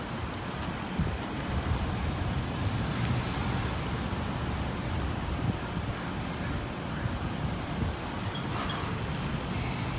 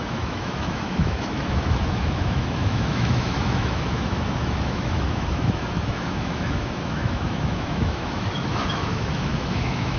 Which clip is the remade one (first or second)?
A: second